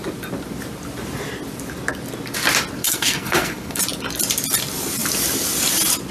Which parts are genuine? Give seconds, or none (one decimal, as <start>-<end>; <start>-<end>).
0.0-2.8; 3.8-6.1